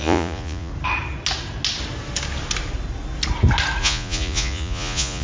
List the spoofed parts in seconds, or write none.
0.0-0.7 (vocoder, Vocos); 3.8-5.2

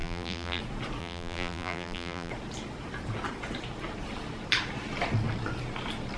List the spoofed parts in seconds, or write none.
0.0-0.6 (vocoder, BigVGAN v2); 1.0-2.3

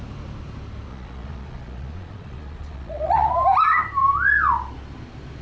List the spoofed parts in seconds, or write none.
0.9-3.3 (vocoder, Vocos)

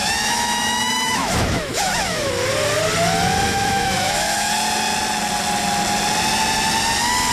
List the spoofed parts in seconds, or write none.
0.0-2.3 (autoencoder, DAC-VAE); 3.5-4.5

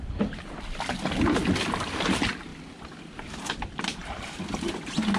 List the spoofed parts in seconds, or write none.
2.5-4.4 (vocoder, BigVGAN v2)

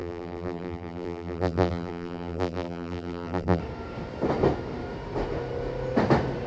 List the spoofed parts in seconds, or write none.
0.0-3.6 (vocoder, BigVGAN v2)

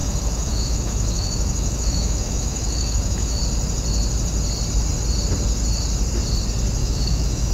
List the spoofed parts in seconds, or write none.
0.0-3.4 (autoencoder, DAC-VAE); 6.8-7.5

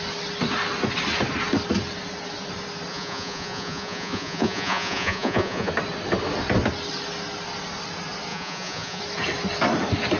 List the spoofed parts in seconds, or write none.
2.9-5.7 (vocoder, Vocos); 8.3-9.0